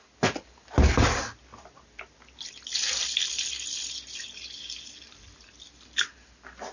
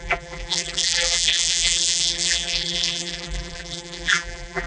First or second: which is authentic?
first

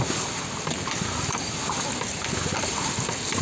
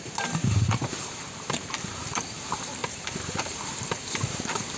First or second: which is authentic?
first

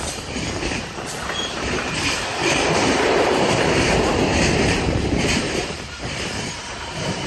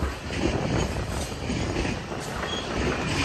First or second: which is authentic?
second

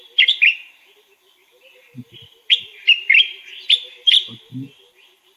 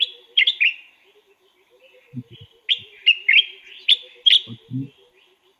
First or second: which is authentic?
second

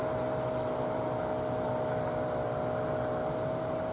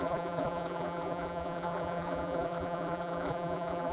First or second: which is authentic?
first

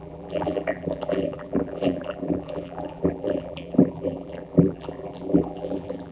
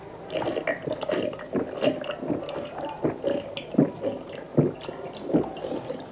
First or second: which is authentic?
second